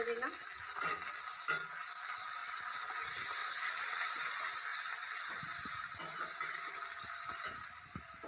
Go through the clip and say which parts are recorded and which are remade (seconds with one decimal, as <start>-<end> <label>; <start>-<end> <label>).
0.0-2.4 recorded; 2.4-2.9 remade; 2.9-3.4 recorded; 3.4-4.3 remade; 4.3-8.3 recorded